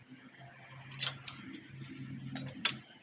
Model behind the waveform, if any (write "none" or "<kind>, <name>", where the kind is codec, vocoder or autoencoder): none